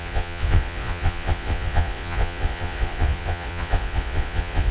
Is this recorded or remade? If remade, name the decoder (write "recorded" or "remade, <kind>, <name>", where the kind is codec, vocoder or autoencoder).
remade, vocoder, Vocos